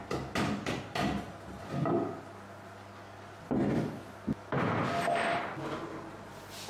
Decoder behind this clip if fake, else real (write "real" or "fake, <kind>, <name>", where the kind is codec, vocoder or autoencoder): real